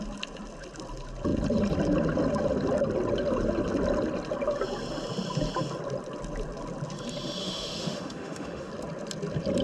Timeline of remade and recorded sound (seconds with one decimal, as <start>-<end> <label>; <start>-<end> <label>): 0.0-7.4 recorded; 7.4-8.7 remade; 8.7-9.6 recorded